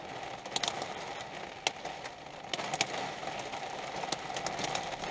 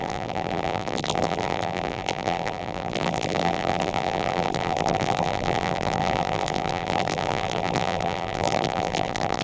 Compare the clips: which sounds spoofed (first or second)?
second